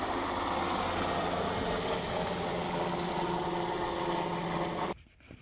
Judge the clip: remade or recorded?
recorded